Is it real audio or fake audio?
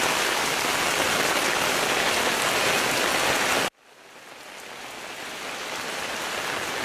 real